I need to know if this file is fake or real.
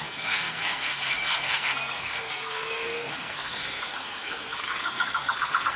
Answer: fake